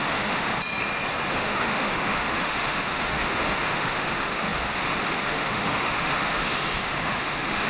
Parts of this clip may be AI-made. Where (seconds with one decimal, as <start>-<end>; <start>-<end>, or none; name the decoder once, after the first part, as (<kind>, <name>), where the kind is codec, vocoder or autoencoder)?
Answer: 0.0-0.5 (autoencoder, DAC-VAE); 1.3-7.7